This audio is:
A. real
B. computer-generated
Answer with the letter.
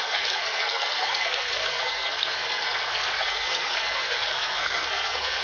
B